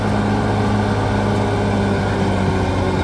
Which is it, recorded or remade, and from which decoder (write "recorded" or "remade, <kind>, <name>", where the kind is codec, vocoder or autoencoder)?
recorded